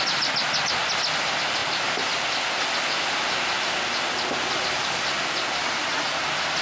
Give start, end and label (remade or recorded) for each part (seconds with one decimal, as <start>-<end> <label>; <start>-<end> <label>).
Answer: 0.0-5.6 recorded; 5.6-6.1 remade; 6.1-6.6 recorded